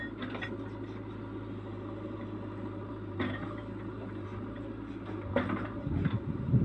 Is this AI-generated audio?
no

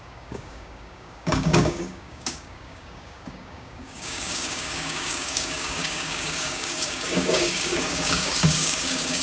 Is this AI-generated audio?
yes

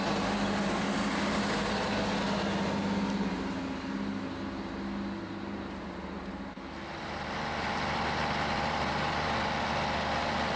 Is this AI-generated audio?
no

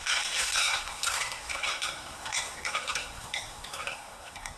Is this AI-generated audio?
yes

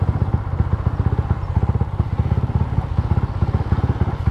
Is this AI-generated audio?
no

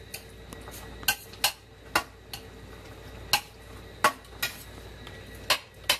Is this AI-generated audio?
no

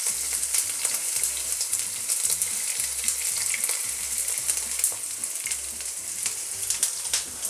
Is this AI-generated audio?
yes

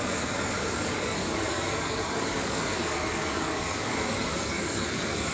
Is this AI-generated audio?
yes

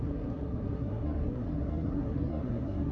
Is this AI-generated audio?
yes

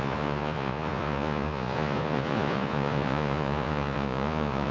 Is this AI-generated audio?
yes